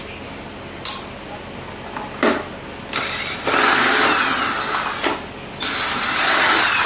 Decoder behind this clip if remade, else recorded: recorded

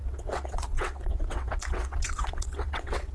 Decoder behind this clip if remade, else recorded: remade, vocoder, WaveNeXt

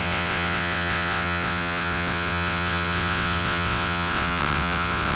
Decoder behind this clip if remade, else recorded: remade, vocoder, WaveNeXt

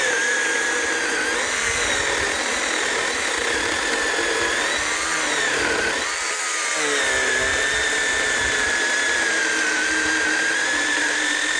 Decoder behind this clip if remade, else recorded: recorded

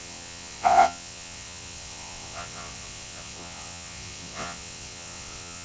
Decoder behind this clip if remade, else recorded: remade, vocoder, WaveNeXt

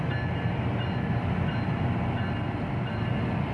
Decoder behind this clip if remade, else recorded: recorded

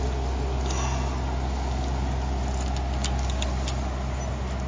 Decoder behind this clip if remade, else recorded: recorded